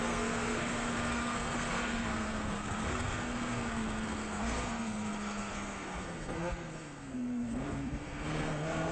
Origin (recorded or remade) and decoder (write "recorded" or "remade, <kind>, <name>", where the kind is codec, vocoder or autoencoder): remade, codec, SNAC